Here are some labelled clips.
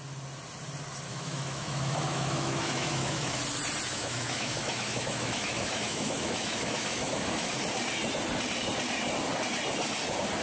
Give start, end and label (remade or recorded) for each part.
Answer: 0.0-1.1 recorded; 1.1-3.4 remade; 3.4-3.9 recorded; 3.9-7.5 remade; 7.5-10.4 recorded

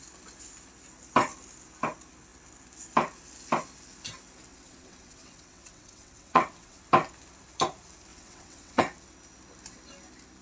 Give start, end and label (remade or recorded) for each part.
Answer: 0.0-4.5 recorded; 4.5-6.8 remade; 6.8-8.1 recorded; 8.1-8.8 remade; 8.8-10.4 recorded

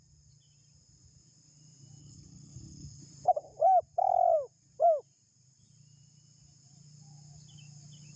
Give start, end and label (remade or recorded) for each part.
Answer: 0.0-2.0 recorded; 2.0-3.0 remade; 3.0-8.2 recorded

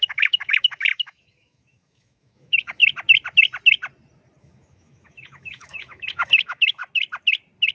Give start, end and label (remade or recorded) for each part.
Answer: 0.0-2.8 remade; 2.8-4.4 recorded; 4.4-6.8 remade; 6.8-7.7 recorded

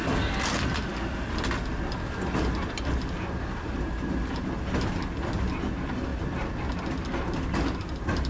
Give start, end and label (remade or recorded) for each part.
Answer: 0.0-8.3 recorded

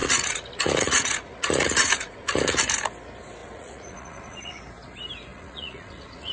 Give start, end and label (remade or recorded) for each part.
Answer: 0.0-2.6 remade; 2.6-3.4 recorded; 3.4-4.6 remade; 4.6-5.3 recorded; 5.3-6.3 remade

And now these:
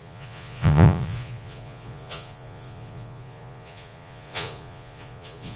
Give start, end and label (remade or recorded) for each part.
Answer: 0.0-5.6 remade